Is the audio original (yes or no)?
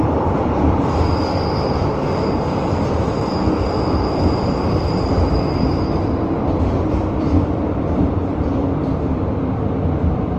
no